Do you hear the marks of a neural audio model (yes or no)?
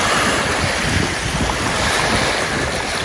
no